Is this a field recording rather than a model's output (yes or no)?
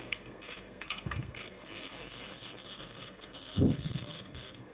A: no